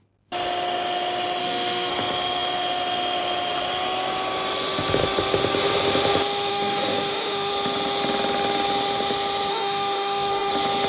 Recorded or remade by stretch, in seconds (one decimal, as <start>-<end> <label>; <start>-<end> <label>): 0.0-1.4 recorded; 1.4-1.9 remade; 1.9-6.5 recorded; 6.5-7.5 remade; 7.5-9.5 recorded; 9.5-10.5 remade; 10.5-10.9 recorded